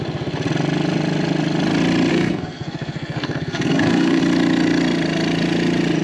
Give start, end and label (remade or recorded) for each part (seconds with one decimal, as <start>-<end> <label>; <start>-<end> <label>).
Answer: 0.0-2.1 recorded; 2.1-4.2 remade; 4.2-6.0 recorded